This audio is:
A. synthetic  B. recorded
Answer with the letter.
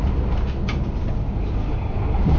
B